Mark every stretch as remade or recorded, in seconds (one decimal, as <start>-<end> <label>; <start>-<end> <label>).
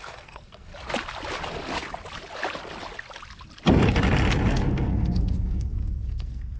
0.0-0.7 remade; 0.7-4.5 recorded; 4.5-6.6 remade